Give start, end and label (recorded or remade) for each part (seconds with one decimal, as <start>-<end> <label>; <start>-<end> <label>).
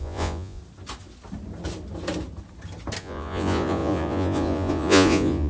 0.0-0.6 remade; 0.6-3.0 recorded; 3.0-5.5 remade